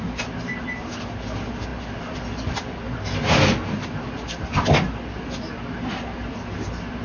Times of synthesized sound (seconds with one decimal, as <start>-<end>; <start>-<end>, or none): none